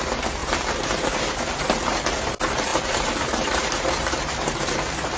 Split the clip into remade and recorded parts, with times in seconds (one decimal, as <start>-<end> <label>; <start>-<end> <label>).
0.0-0.4 recorded; 0.4-1.4 remade; 1.4-2.7 recorded; 2.7-3.9 remade; 3.9-5.2 recorded